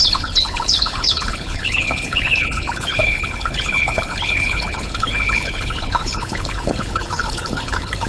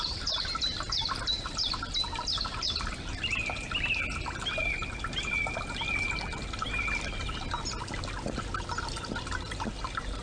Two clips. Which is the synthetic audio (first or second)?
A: first